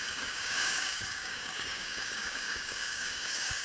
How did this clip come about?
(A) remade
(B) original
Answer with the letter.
A